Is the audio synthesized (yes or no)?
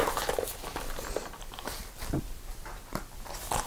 no